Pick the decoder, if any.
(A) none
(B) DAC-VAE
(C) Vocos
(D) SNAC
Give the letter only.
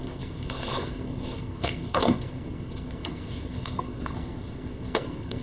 D